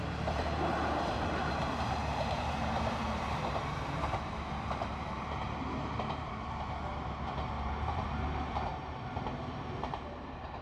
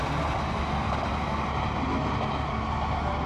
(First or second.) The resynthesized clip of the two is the first